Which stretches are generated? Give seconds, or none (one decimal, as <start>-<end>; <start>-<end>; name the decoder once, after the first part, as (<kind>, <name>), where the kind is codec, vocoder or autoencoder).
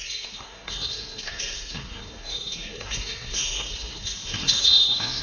0.0-5.2 (codec, SNAC)